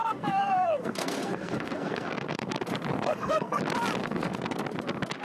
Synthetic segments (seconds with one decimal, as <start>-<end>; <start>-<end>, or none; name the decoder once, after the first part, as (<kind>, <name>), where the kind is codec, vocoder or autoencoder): 0.0-2.5 (codec, SNAC); 2.9-3.6; 4.0-4.6